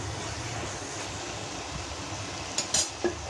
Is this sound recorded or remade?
recorded